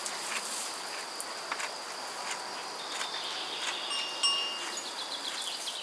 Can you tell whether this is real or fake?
real